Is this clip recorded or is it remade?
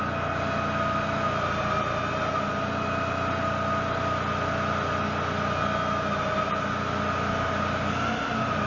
recorded